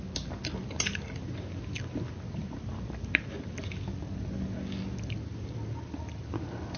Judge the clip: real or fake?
real